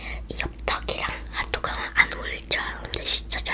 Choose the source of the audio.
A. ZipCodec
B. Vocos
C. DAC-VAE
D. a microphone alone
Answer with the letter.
D